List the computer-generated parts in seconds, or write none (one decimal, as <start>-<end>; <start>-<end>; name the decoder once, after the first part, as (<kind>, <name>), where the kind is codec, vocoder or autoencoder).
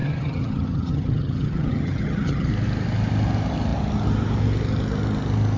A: 0.0-2.5 (vocoder, HiFi-GAN)